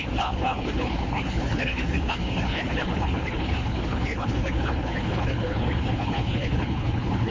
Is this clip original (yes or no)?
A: no